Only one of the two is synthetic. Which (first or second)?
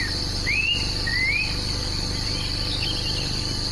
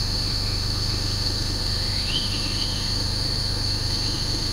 second